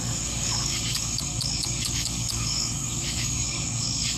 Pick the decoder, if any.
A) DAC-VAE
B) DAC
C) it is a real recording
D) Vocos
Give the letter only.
B